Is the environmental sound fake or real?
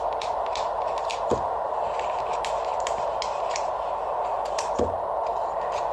real